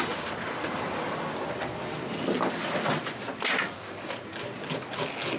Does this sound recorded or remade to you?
recorded